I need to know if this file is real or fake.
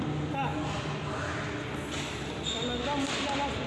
real